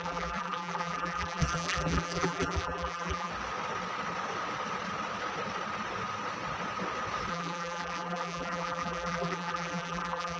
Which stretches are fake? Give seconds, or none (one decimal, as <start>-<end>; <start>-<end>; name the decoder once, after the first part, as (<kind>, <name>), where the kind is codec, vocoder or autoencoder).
0.0-3.3 (vocoder, BigVGAN v2); 7.3-10.4